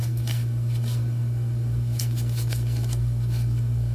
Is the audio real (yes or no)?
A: no